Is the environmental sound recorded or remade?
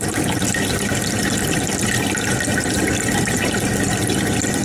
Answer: recorded